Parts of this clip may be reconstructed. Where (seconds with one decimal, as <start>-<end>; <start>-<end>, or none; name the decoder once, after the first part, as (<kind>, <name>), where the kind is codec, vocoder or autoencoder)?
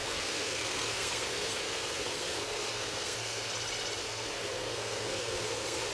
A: 0.0-3.5 (codec, SNAC); 4.0-5.9